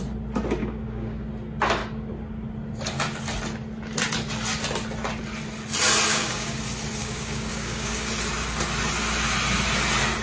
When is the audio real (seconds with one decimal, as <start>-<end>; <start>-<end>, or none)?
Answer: 0.0-0.6; 1.3-6.1; 6.6-7.0; 8.1-10.2

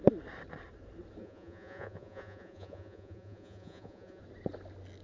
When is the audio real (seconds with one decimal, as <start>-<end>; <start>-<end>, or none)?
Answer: 0.0-1.2; 4.2-5.0

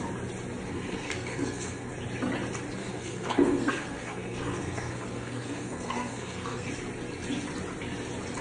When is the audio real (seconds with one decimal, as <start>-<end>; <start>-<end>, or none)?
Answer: 0.0-0.7; 1.9-2.8; 6.7-8.4

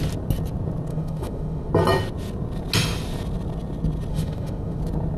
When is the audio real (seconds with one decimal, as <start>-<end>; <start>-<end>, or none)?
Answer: 0.0-0.9; 1.7-4.1; 4.8-5.2

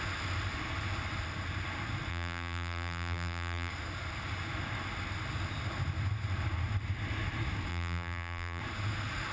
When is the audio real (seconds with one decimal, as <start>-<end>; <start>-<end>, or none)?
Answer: 0.0-2.1; 3.7-7.7; 8.6-9.3

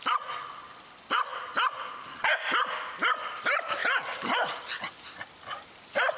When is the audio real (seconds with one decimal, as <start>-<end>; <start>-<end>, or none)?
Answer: 0.0-1.3; 1.8-6.2

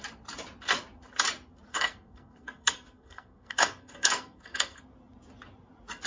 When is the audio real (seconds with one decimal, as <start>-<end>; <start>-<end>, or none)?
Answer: 0.0-1.7; 4.8-6.1

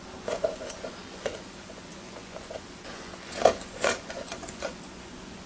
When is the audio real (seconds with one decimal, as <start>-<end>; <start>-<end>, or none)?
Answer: none